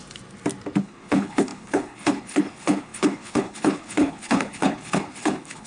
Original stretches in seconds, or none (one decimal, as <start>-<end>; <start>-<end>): 0.0-0.8